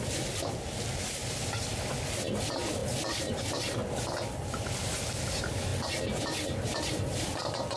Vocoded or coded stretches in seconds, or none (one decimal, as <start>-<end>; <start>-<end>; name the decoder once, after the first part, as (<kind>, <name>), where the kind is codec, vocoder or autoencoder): 0.0-2.8 (vocoder, BigVGAN v2); 3.3-3.8; 4.4-5.7; 6.2-7.8